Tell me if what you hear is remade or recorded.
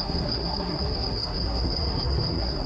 remade